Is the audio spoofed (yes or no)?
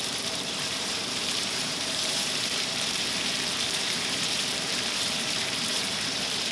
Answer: yes